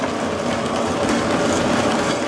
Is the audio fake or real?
real